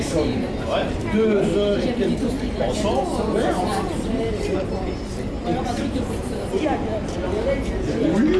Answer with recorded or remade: recorded